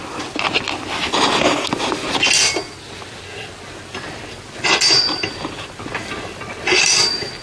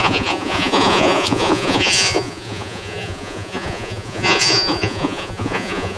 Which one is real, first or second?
first